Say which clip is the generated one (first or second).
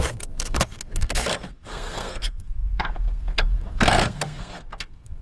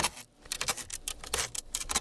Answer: first